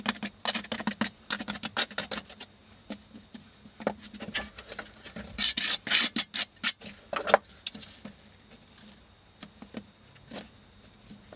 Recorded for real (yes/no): yes